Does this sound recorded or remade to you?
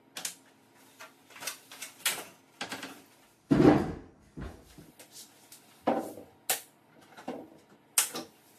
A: recorded